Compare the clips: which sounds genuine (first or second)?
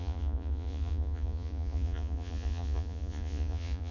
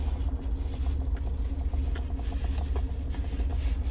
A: second